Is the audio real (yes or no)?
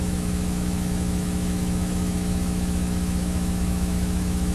no